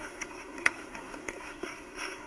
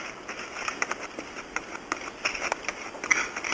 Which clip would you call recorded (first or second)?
second